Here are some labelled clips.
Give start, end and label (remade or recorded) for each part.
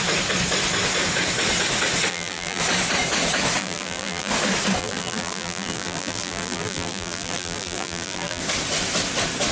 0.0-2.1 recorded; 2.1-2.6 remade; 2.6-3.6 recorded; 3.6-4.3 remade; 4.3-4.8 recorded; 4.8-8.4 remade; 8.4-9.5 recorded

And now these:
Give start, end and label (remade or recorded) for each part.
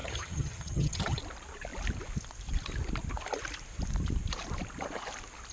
0.0-1.2 remade; 1.2-5.5 recorded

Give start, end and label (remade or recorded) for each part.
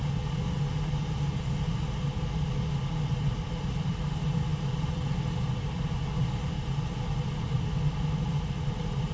0.0-9.1 recorded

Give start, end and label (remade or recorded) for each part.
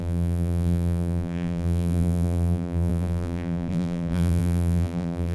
0.0-5.3 remade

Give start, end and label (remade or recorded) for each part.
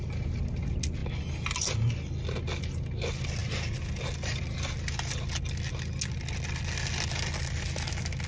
0.0-8.3 recorded